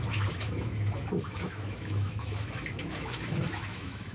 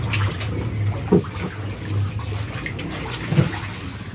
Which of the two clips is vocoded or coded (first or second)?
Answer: first